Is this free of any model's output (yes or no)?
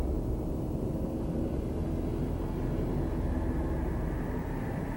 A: yes